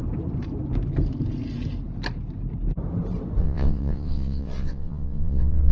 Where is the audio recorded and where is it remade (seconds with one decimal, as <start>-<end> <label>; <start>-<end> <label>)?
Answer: 0.0-3.4 recorded; 3.4-5.7 remade